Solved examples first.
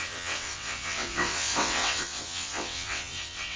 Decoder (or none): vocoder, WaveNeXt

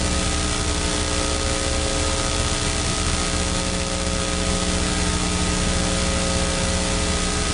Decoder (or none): none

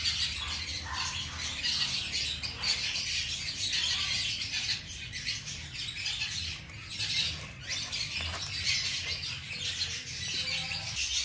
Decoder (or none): none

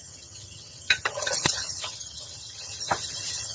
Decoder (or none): vocoder, HiFi-GAN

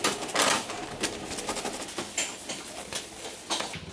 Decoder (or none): none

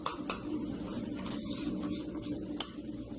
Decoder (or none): none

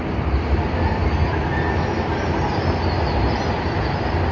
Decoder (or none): none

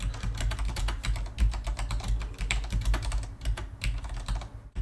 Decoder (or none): none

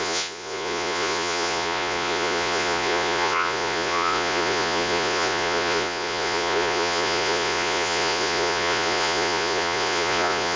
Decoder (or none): vocoder, Vocos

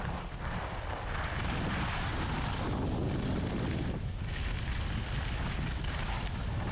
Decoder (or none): none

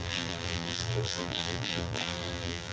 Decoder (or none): vocoder, BigVGAN v2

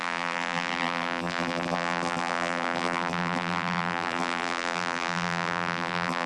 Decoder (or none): vocoder, BigVGAN v2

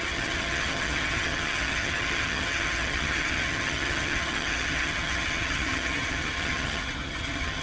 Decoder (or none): vocoder, HiFi-GAN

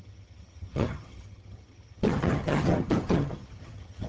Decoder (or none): vocoder, HiFi-GAN